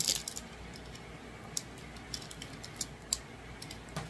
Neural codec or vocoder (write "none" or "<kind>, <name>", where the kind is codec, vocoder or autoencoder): none